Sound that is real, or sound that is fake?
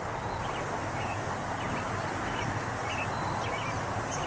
real